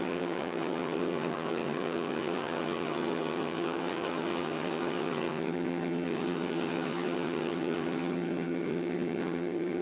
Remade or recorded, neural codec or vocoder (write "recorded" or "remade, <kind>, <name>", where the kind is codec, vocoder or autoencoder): remade, vocoder, HiFi-GAN